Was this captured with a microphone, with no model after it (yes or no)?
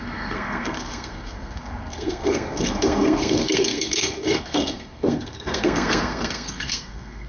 no